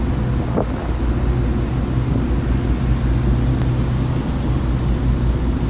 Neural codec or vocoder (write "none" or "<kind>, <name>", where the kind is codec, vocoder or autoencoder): none